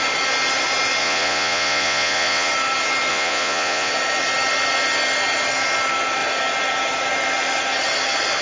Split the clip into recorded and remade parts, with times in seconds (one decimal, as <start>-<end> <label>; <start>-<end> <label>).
0.0-1.0 recorded; 1.0-2.5 remade; 2.5-3.1 recorded; 3.1-3.9 remade; 3.9-8.4 recorded